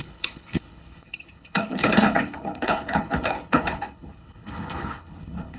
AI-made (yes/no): yes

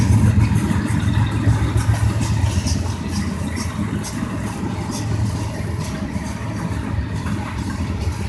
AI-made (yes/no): no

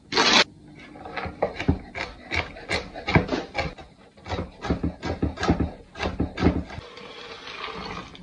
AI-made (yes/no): no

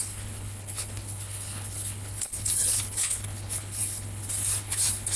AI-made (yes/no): yes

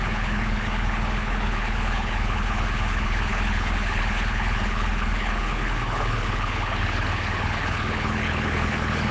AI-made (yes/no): yes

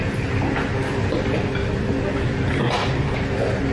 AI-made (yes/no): no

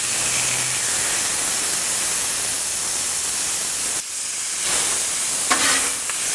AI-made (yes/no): no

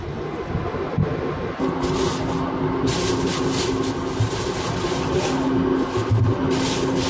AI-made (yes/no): no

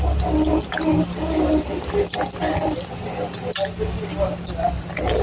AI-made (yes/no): no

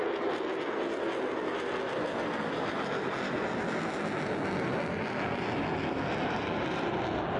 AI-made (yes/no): no